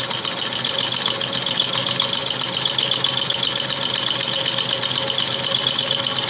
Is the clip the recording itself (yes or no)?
yes